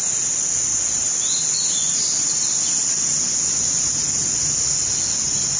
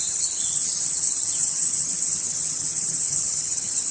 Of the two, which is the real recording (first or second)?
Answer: first